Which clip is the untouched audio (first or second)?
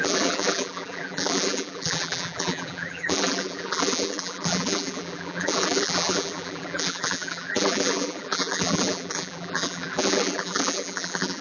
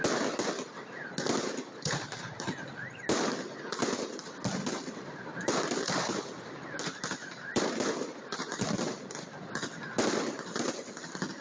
second